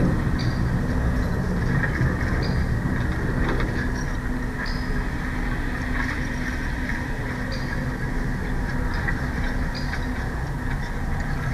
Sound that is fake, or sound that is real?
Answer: real